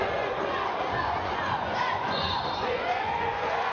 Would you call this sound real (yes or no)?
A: no